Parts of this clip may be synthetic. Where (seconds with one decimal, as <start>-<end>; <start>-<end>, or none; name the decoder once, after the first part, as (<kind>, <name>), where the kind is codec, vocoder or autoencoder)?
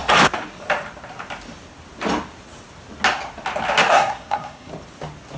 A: 3.8-4.7 (codec, SNAC)